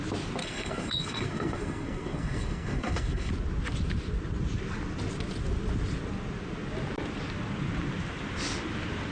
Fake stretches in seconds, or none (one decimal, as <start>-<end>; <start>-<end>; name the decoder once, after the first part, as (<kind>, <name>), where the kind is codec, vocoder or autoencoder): 0.4-3.3 (codec, SNAC)

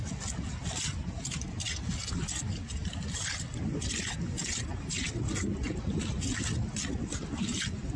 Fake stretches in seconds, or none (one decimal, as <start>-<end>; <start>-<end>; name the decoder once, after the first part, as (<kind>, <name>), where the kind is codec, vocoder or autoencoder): none

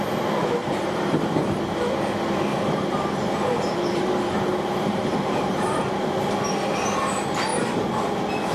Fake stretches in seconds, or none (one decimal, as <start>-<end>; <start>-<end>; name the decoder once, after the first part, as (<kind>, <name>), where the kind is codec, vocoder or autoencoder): 0.6-1.6 (vocoder, BigVGAN v2); 2.5-5.9

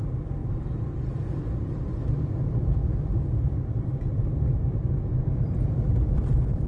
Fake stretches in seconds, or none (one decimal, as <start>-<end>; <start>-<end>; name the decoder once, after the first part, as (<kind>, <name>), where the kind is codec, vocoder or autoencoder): 0.4-2.3 (vocoder, BigVGAN v2); 2.8-5.2

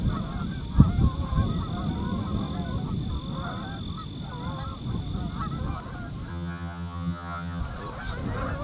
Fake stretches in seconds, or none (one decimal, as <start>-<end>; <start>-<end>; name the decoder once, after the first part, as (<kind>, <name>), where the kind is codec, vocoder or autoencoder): 6.3-7.6 (vocoder, HiFi-GAN)

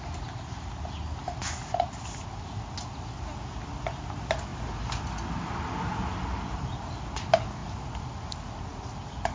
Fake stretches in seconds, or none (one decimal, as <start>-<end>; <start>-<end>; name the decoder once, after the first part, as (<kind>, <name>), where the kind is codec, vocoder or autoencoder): none

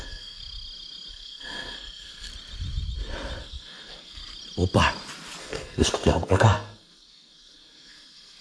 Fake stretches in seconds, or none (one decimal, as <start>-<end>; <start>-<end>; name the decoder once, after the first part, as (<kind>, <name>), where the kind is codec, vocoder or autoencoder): 0.0-0.4 (codec, SNAC); 1.1-2.3; 3.4-4.2; 5.4-8.4